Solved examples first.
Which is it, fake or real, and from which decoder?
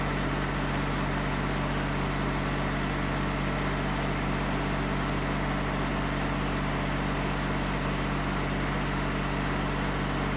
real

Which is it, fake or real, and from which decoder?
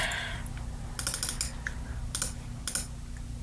real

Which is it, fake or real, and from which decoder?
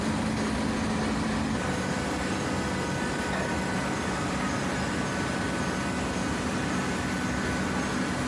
real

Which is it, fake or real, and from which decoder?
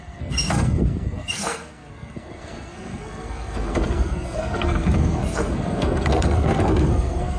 fake, codec, SNAC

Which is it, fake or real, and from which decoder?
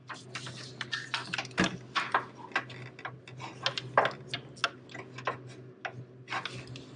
real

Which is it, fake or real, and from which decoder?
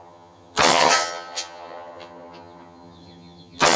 fake, vocoder, HiFi-GAN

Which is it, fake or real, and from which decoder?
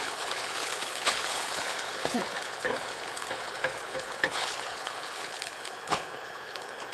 fake, codec, HILCodec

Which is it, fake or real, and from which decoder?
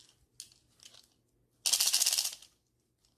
real